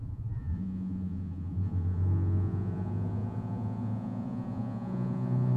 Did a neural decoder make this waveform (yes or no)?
yes